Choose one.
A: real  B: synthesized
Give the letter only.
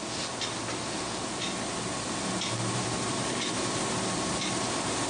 A